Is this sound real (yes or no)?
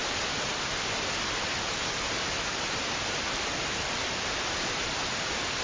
yes